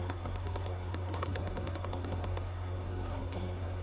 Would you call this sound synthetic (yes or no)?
yes